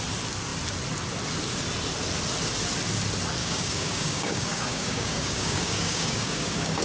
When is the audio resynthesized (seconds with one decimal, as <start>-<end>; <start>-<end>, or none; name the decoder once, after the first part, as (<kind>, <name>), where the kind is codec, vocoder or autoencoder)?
3.4-6.8 (codec, DAC)